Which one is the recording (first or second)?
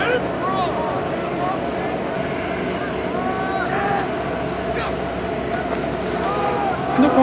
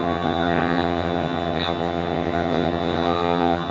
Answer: first